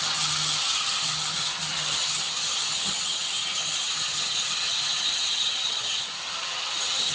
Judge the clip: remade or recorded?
remade